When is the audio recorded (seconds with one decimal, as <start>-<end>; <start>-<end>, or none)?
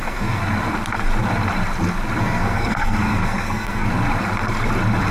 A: 0.4-2.2; 3.9-5.1